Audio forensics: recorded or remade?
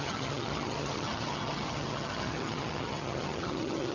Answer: remade